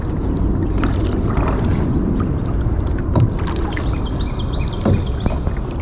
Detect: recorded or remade recorded